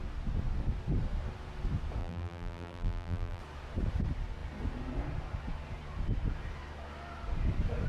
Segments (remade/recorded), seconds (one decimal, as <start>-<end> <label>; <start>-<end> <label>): 0.0-2.0 recorded; 2.0-3.4 remade; 3.4-7.9 recorded